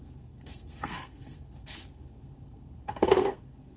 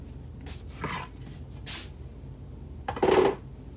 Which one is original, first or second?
second